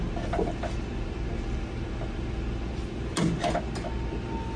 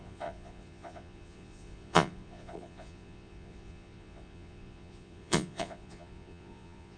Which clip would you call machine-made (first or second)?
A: second